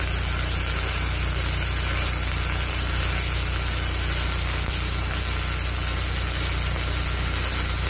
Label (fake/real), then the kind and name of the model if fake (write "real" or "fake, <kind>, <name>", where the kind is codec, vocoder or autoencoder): real